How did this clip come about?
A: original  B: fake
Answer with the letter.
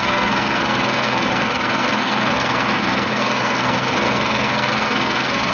B